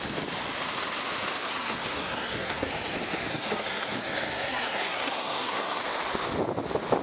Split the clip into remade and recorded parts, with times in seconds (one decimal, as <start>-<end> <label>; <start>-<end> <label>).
0.0-1.5 recorded; 1.5-2.7 remade; 2.7-3.3 recorded; 3.3-5.8 remade; 5.8-7.0 recorded